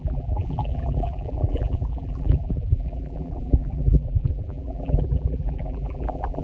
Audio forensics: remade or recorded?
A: remade